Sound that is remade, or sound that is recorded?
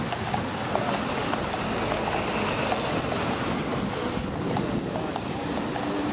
recorded